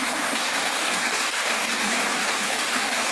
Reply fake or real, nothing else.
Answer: fake